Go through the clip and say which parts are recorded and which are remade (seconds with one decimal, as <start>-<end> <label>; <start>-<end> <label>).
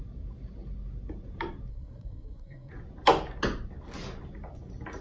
0.0-1.7 recorded; 1.7-2.7 remade; 2.7-5.0 recorded